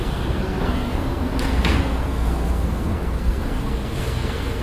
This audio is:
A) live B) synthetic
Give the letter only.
B